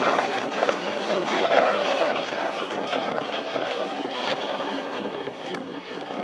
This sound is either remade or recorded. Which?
remade